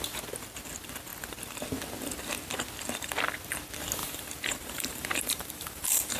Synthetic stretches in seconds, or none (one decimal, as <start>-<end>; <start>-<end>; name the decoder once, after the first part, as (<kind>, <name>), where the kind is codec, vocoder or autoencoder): 4.0-6.2 (vocoder, BigVGAN v2)